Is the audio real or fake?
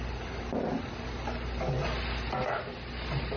real